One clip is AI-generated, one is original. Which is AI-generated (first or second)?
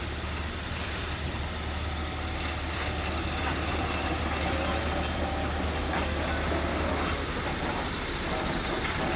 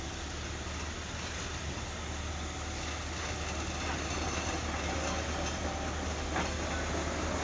second